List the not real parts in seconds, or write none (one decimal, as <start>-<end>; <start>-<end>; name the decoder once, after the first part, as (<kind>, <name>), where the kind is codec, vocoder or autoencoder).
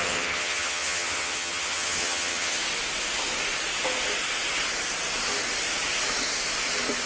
0.0-2.6 (vocoder, HiFi-GAN)